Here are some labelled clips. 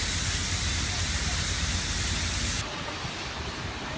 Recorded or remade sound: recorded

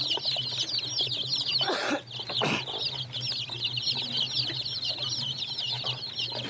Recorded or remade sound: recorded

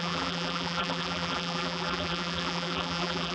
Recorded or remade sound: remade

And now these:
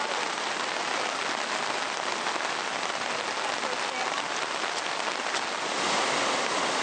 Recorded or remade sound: recorded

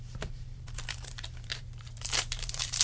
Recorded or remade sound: remade